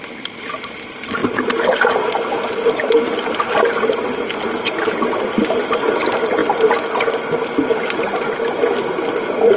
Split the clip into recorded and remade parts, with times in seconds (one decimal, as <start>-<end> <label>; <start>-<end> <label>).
0.0-9.6 recorded